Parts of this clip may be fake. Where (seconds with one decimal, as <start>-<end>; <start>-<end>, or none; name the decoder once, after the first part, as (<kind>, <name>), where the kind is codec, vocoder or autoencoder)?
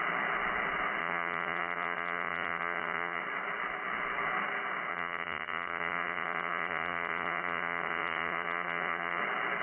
1.0-3.2 (vocoder, HiFi-GAN); 4.9-9.2